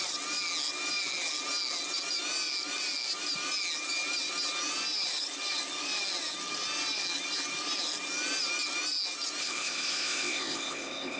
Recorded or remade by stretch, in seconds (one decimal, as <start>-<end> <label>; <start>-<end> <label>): 0.0-9.4 recorded; 9.4-11.2 remade